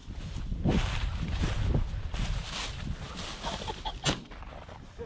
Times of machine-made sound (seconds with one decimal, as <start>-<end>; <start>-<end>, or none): 0.0-1.4